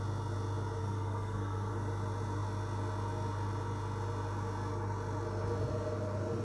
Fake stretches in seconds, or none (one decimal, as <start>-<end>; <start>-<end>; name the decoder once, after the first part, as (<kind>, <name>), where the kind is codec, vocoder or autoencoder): 0.8-1.7 (codec, SNAC)